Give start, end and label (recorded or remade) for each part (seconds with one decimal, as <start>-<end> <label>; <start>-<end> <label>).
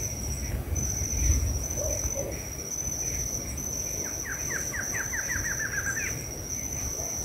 0.0-1.3 recorded; 1.3-1.8 remade; 1.8-7.2 recorded